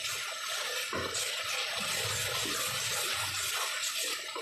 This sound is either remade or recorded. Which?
recorded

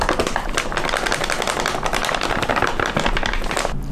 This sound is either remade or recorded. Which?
recorded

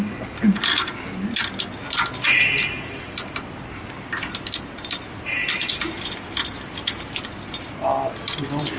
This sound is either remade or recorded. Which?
recorded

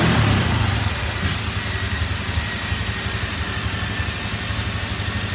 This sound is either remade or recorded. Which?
recorded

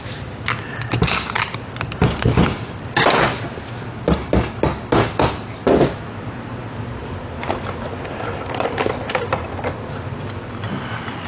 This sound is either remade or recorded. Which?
recorded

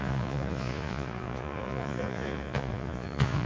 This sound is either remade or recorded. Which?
remade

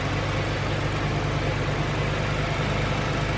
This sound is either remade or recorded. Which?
recorded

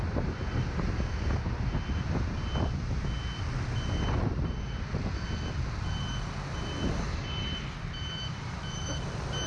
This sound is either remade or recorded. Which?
recorded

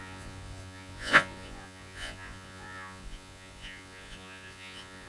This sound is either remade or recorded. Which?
remade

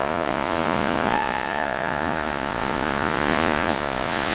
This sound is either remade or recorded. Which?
remade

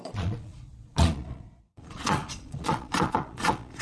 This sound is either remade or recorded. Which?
remade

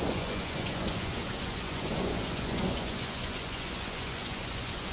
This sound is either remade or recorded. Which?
remade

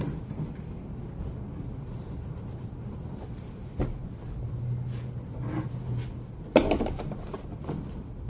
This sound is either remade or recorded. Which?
recorded